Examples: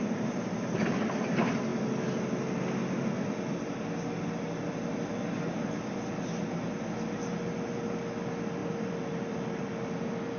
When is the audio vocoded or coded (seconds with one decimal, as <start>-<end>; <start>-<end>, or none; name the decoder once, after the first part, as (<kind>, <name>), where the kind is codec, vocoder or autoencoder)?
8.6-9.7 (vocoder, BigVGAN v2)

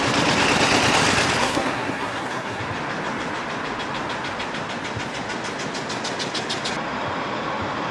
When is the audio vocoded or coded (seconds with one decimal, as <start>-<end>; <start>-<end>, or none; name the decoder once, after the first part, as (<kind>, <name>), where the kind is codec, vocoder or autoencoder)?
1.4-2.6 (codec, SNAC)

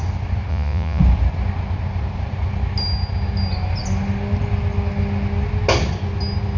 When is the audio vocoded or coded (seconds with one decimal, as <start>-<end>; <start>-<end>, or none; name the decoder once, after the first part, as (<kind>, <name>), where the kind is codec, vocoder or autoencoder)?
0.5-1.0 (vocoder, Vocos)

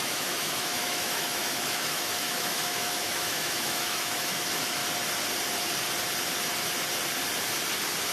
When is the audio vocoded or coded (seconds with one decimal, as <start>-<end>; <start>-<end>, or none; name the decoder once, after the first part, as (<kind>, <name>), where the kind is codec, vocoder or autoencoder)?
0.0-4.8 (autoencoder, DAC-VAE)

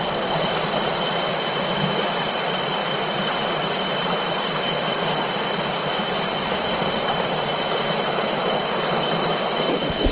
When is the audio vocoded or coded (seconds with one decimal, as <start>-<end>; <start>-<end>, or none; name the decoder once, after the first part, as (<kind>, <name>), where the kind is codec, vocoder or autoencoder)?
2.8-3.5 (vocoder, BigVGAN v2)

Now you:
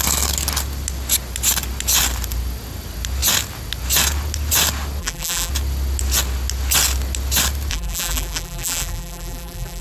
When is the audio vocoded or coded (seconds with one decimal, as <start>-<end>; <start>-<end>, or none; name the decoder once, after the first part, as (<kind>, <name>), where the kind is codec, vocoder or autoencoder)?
5.0-5.5 (vocoder, BigVGAN v2); 7.7-9.8

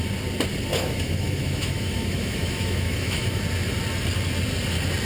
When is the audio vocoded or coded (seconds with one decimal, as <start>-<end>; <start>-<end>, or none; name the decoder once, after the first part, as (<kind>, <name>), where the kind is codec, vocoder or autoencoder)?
0.7-3.4 (autoencoder, DAC-VAE)